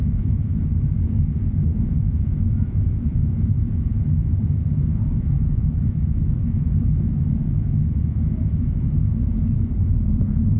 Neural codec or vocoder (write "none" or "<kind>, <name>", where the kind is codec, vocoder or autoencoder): vocoder, Vocos